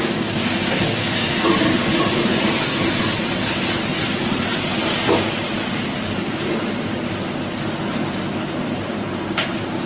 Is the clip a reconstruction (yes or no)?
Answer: no